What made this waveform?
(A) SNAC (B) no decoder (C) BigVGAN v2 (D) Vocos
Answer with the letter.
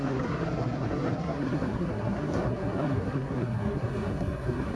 A